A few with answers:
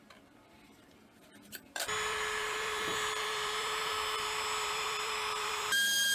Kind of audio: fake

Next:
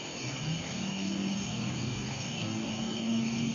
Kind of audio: fake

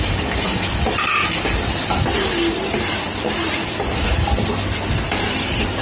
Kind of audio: real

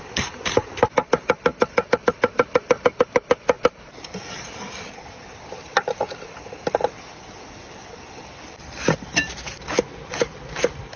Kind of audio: real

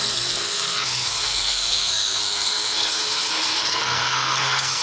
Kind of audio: fake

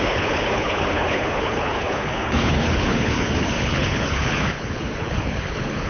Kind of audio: fake